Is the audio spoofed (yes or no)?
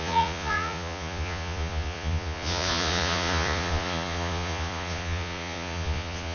yes